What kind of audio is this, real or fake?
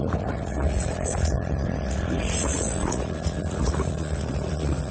fake